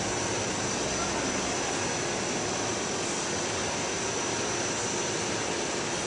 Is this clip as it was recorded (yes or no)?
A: yes